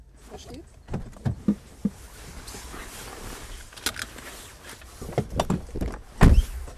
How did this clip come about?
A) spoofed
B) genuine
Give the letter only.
B